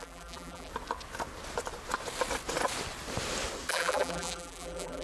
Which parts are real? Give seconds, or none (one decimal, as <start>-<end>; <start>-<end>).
0.7-3.7